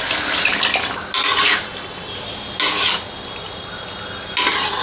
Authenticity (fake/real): real